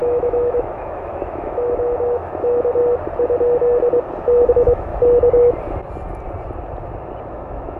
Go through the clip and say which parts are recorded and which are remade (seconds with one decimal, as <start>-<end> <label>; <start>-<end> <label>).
0.0-2.8 remade; 2.8-4.5 recorded; 4.5-4.9 remade; 4.9-7.3 recorded; 7.3-7.8 remade